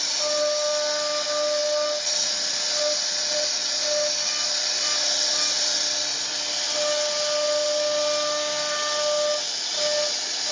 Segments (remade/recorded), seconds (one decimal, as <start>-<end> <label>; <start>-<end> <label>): 0.0-10.5 recorded